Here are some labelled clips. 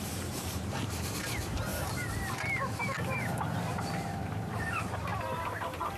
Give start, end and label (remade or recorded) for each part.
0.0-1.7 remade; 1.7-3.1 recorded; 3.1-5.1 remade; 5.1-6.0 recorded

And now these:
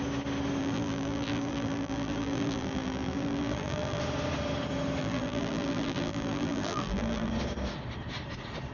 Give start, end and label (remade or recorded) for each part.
0.0-0.6 recorded; 0.6-4.0 remade; 4.0-5.0 recorded; 5.0-7.3 remade; 7.3-8.7 recorded

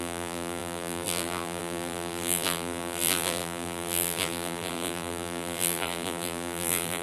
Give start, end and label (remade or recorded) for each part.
0.0-7.0 remade

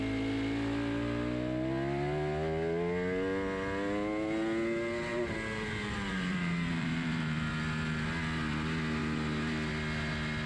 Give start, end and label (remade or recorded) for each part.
0.0-5.1 recorded; 5.1-7.5 remade; 7.5-10.5 recorded